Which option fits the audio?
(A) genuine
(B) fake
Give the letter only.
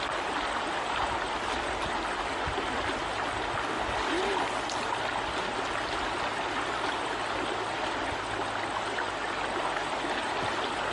A